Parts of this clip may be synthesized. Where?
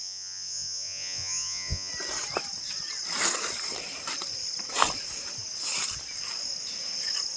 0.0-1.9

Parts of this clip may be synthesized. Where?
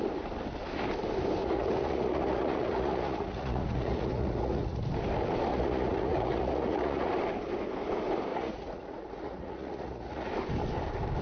1.4-4.8; 5.5-7.1; 8.3-10.3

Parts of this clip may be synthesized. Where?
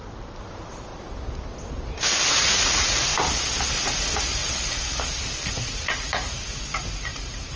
0.5-0.9; 2.3-3.1; 3.7-4.4; 5.5-7.6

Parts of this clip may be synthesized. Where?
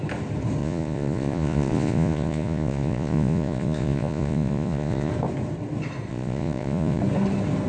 0.6-5.1; 6.1-7.0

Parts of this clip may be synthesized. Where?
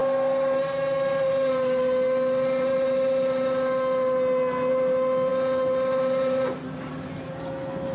none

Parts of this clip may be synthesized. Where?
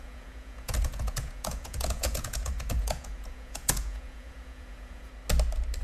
0.0-5.1